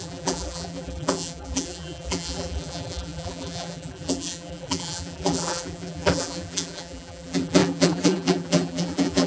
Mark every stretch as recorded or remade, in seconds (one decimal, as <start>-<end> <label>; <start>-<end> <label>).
0.0-9.3 remade